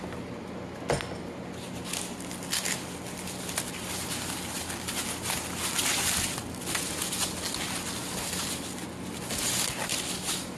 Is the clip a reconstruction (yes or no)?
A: no